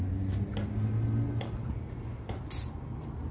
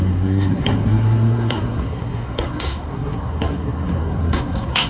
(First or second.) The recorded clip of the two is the first